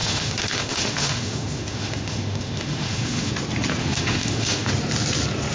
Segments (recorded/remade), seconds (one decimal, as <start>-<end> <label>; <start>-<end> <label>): 0.0-3.3 remade; 3.3-3.8 recorded; 3.8-4.7 remade; 4.7-5.5 recorded